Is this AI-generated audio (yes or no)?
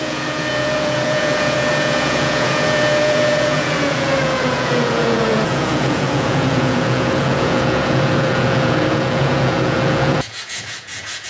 yes